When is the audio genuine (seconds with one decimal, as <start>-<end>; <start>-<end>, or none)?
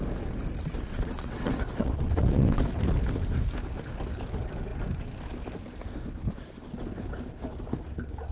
0.0-0.9; 2.6-8.3